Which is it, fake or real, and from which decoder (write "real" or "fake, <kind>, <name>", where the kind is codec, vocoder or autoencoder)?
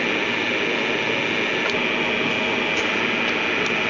real